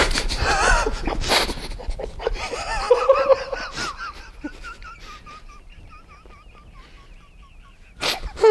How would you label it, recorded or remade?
recorded